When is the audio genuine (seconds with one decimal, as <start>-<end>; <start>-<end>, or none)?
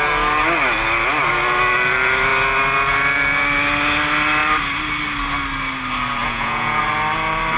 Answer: 0.0-6.2; 6.8-7.6